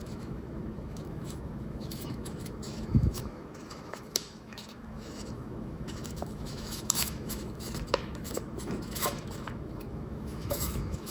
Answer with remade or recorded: remade